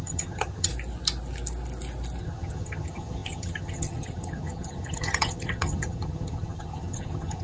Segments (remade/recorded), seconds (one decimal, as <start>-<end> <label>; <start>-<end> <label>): 0.0-0.7 remade; 0.7-2.2 recorded; 2.2-7.4 remade